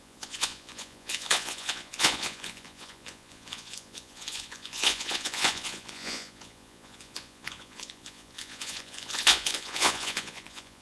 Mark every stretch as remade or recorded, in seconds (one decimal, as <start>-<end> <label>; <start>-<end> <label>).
0.0-10.8 remade